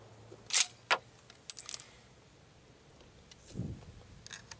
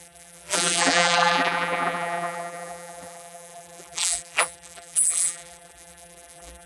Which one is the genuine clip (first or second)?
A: first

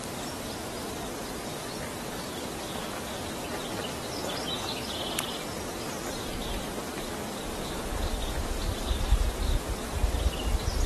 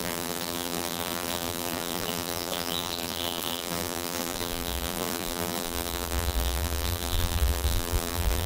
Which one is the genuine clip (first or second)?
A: first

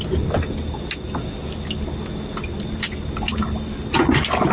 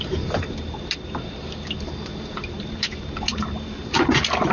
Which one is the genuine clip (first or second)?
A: first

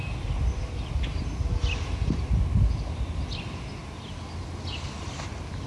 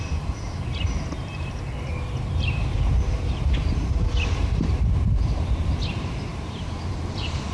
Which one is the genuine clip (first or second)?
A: first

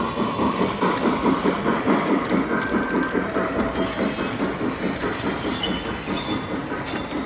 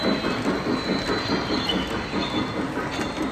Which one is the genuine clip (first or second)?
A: second